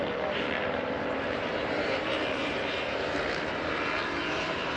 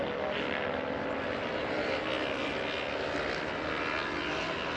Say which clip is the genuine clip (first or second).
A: second